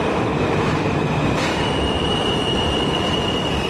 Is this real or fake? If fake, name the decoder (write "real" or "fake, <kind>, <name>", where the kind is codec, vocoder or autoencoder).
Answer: fake, vocoder, BigVGAN v2